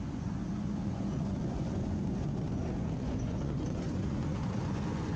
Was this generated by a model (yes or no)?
yes